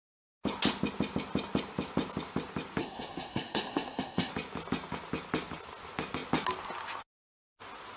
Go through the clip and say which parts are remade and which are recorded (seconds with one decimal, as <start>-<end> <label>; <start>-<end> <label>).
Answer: 0.0-2.8 recorded; 2.8-4.3 remade; 4.3-8.0 recorded